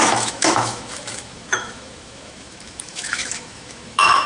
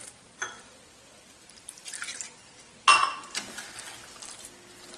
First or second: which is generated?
first